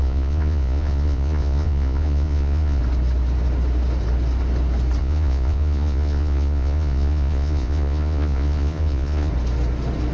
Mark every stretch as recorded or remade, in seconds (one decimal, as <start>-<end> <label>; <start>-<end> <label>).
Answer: 0.0-2.8 remade; 2.8-5.0 recorded; 5.0-9.3 remade; 9.3-10.1 recorded

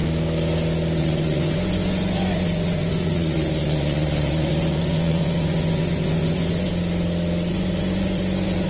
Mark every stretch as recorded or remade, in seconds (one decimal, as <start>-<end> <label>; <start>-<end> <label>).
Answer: 0.0-1.0 recorded; 1.0-6.7 remade; 6.7-7.5 recorded; 7.5-8.7 remade